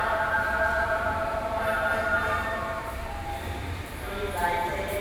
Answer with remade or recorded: remade